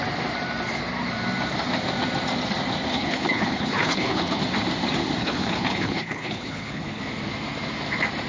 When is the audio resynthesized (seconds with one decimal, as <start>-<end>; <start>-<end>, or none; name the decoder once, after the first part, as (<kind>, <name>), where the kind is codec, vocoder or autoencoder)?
2.9-4.4 (codec, HILCodec); 5.2-7.0